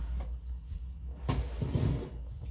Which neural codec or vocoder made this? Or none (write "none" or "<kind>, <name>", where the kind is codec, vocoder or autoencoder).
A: none